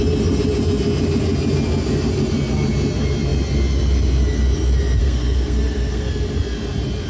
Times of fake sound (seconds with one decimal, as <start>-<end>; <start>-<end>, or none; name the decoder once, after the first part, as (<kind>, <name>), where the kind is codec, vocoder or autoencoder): 5.0-6.1 (codec, SNAC)